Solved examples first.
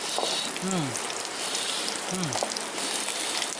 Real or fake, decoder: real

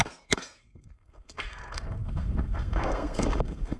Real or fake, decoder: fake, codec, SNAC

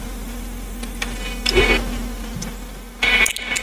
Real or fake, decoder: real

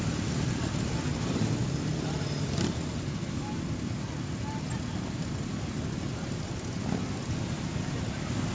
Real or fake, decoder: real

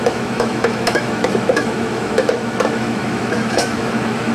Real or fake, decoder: fake, autoencoder, DAC-VAE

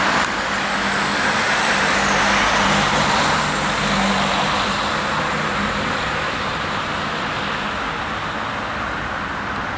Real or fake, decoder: real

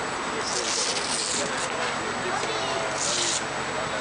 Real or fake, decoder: real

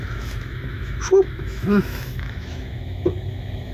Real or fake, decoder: fake, autoencoder, DAC-VAE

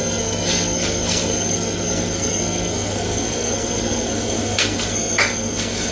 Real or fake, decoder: fake, codec, SNAC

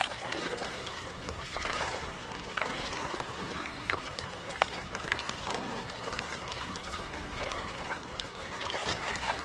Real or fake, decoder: fake, codec, SNAC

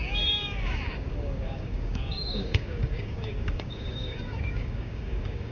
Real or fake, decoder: fake, codec, DAC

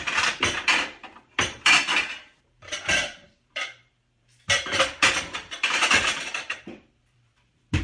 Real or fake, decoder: fake, vocoder, BigVGAN v2